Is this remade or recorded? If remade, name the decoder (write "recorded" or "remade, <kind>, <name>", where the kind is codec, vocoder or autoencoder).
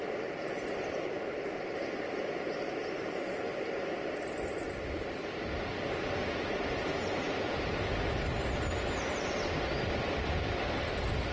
recorded